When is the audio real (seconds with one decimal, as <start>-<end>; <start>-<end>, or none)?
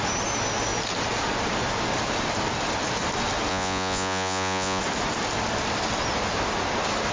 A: 0.0-3.5; 4.8-7.1